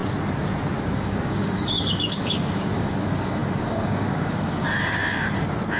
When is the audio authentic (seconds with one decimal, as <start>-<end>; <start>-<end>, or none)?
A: 0.0-0.8; 5.0-5.8